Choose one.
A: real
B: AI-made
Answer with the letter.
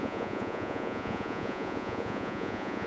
B